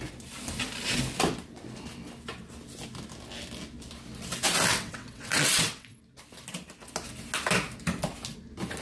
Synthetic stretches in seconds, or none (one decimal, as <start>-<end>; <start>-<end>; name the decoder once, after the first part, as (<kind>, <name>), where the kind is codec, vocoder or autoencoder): 4.7-6.0 (vocoder, WaveNeXt)